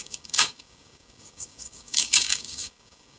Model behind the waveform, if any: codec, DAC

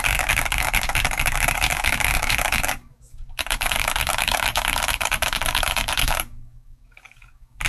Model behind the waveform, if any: codec, DAC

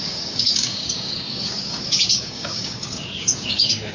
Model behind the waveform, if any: codec, DAC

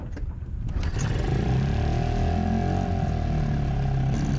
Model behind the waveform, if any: none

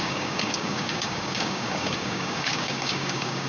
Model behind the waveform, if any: codec, DAC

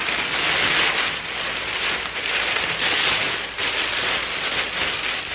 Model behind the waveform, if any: none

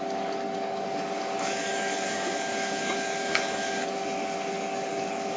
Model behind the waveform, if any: codec, DAC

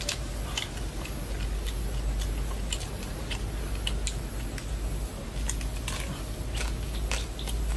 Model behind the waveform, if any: none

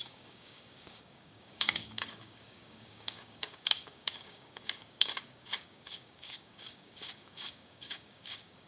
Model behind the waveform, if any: codec, DAC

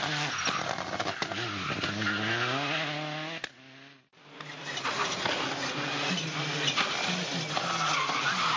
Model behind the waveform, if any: none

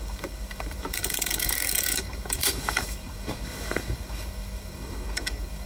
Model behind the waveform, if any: codec, DAC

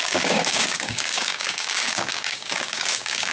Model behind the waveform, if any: codec, DAC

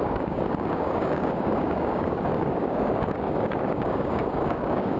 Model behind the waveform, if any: codec, DAC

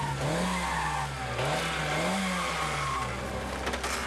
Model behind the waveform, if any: none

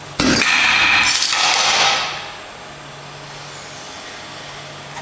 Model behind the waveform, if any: none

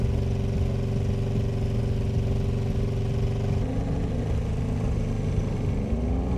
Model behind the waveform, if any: none